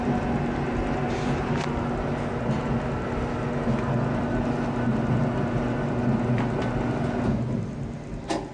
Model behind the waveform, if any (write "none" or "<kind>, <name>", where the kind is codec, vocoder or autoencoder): none